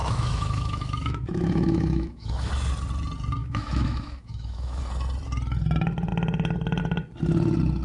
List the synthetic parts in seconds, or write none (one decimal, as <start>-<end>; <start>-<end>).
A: 0.0-2.5; 3.4-4.8